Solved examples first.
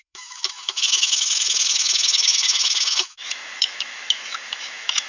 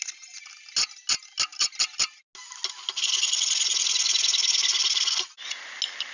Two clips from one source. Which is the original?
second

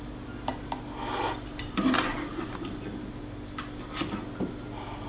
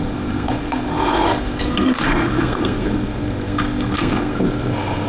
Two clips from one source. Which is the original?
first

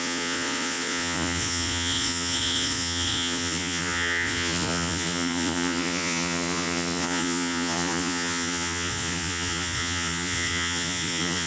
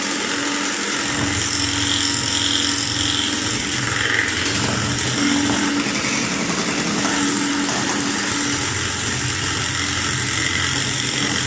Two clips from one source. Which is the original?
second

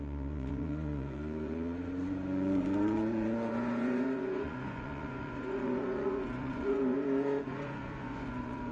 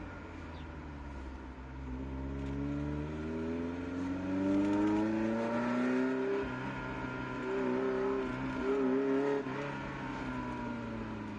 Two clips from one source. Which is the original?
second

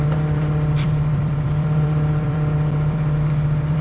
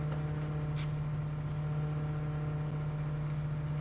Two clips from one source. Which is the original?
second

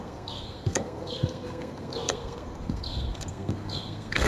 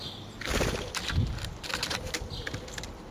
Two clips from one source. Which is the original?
second